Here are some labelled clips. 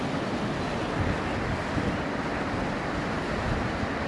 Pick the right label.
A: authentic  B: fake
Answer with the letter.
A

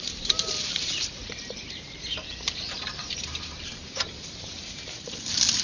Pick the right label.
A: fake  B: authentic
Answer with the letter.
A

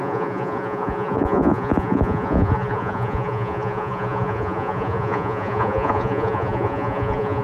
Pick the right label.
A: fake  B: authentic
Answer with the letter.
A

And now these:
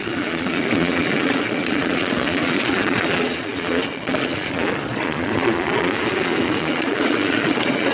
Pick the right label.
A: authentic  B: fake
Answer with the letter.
B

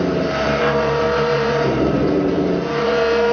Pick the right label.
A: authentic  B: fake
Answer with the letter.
B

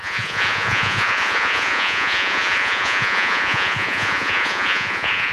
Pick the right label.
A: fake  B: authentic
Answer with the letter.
A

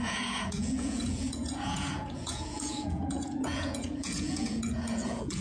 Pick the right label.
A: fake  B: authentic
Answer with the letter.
A